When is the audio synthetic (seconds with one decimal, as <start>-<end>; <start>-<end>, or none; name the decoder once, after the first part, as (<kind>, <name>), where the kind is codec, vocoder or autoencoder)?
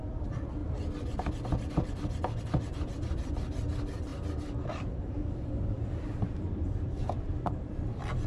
0.0-0.6 (vocoder, BigVGAN v2); 2.4-4.1; 5.3-8.3